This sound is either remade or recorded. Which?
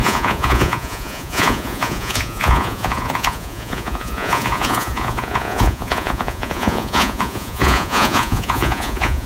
remade